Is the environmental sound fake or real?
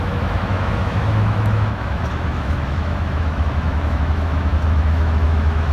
fake